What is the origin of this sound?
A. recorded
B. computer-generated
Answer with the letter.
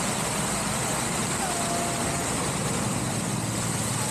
A